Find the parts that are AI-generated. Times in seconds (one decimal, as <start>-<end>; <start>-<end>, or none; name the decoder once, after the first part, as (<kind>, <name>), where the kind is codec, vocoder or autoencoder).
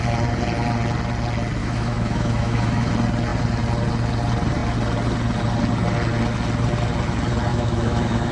1.6-2.9 (autoencoder, DAC-VAE); 7.5-8.3